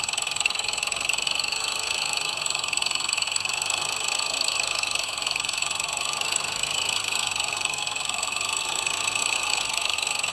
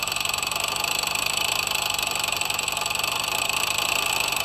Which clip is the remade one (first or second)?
first